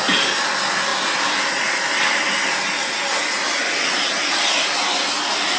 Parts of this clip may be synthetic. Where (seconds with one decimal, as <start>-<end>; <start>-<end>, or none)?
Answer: none